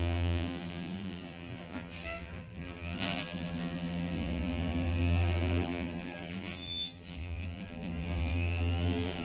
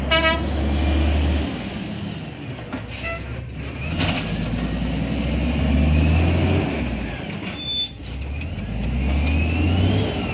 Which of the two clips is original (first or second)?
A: second